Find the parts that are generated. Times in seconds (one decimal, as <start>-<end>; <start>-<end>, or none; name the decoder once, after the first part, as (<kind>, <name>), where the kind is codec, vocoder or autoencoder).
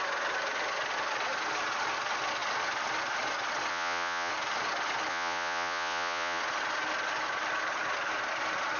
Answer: 3.7-4.3 (vocoder, Vocos); 5.1-6.4